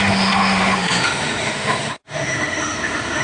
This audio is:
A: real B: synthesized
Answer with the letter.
B